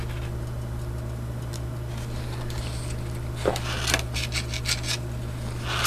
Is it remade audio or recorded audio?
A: recorded